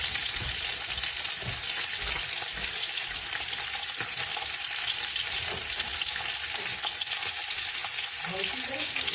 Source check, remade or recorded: recorded